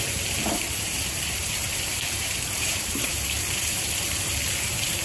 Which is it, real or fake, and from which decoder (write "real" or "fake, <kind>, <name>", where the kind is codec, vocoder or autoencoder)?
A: fake, vocoder, BigVGAN v2